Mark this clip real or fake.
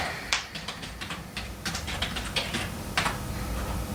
fake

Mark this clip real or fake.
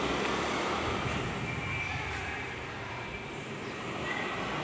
real